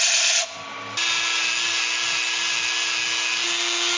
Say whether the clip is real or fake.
real